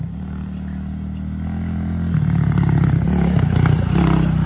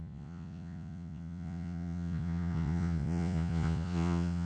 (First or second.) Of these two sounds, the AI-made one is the second